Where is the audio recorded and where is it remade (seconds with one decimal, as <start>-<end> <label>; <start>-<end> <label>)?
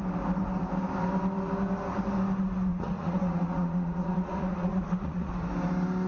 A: 0.0-2.7 recorded; 2.7-5.3 remade; 5.3-6.1 recorded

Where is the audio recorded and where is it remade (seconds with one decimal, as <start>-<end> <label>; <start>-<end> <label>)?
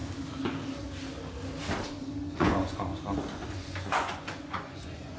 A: 0.0-2.3 recorded; 2.3-2.9 remade; 2.9-3.5 recorded; 3.5-5.2 remade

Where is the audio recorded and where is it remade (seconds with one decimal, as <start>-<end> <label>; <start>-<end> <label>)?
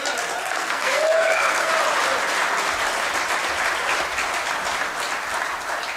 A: 0.0-0.4 recorded; 0.4-1.7 remade; 1.7-6.0 recorded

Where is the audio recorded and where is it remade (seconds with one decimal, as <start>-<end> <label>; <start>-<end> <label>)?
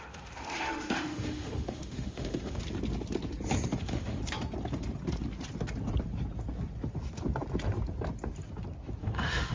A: 0.0-2.6 remade; 2.6-3.8 recorded; 3.8-4.2 remade; 4.2-9.0 recorded; 9.0-9.5 remade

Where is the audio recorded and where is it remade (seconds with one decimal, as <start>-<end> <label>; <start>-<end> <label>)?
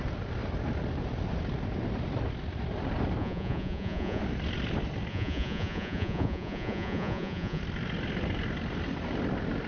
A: 0.0-3.2 recorded; 3.2-4.2 remade; 4.2-5.1 recorded; 5.1-7.6 remade; 7.6-9.7 recorded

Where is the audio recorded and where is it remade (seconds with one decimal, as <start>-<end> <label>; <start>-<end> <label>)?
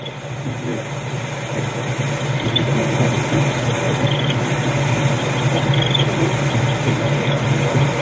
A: 0.0-8.0 recorded